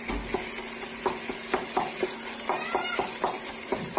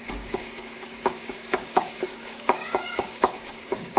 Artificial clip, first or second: second